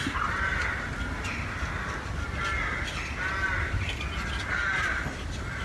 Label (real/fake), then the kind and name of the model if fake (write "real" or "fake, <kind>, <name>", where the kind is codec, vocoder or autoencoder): real